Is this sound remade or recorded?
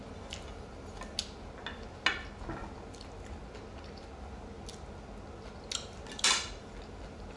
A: recorded